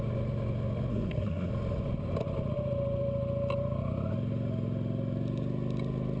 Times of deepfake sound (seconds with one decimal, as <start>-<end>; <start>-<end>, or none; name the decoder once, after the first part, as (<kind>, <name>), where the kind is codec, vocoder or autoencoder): 0.9-1.5 (codec, SNAC)